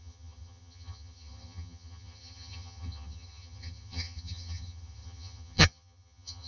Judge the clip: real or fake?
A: fake